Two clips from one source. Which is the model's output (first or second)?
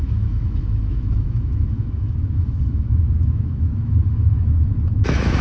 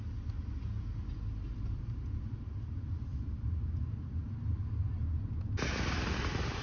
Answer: first